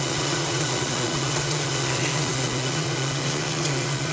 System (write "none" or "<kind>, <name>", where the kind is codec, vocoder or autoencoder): vocoder, Vocos